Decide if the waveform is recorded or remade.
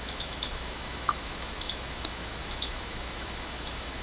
remade